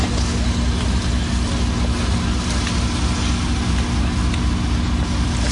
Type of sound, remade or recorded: recorded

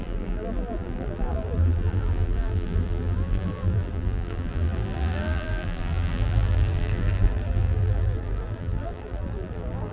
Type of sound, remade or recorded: remade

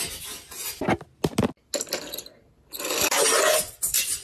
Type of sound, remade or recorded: recorded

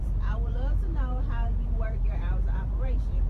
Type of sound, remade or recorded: remade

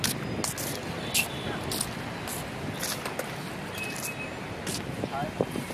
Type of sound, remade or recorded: recorded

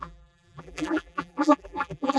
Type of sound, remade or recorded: remade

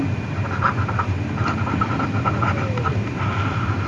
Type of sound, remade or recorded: remade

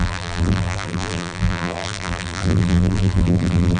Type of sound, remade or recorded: remade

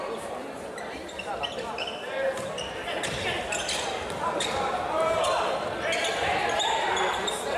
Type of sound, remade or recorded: recorded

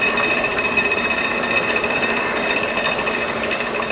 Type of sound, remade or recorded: remade